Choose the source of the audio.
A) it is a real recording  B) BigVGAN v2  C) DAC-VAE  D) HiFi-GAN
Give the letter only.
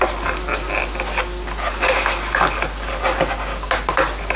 A